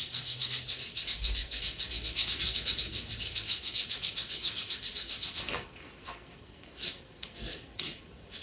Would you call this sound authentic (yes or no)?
no